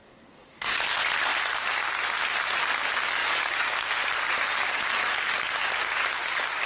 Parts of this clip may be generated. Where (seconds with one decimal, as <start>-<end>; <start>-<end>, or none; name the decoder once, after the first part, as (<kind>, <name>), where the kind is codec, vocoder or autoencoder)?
0.0-0.8 (codec, SNAC)